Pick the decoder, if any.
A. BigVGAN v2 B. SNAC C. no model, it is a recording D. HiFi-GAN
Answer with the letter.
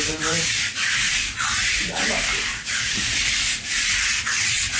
A